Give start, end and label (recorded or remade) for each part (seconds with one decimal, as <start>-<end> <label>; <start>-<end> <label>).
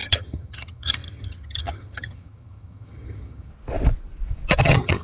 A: 0.0-3.5 remade; 3.5-4.6 recorded; 4.6-5.0 remade